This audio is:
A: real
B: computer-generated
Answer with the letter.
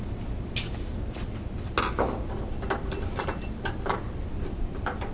A